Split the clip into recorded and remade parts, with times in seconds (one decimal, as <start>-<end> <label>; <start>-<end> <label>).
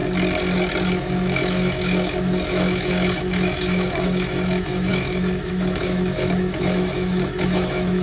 0.0-0.9 recorded; 0.9-8.0 remade